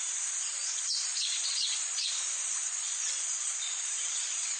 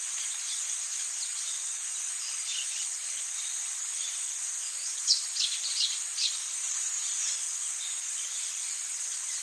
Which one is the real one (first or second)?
second